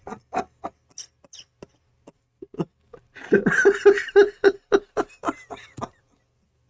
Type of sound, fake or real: real